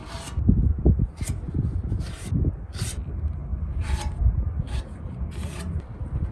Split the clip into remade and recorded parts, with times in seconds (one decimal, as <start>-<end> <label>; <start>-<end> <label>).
0.0-1.3 recorded; 1.3-6.3 remade